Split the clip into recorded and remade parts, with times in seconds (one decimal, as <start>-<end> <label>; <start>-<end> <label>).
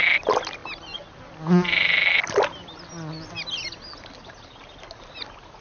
0.0-5.6 recorded